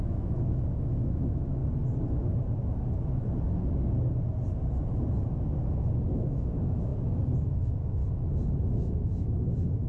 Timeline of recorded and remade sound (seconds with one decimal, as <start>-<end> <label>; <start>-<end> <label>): 0.0-1.6 remade; 1.6-6.1 recorded; 6.1-8.0 remade; 8.0-8.7 recorded; 8.7-9.9 remade